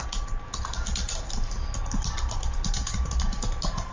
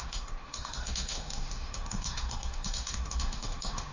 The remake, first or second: second